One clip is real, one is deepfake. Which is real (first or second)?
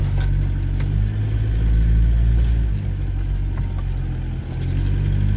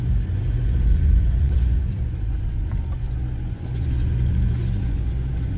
first